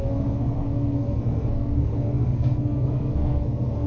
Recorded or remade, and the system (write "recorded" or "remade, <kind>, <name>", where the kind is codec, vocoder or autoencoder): remade, codec, SNAC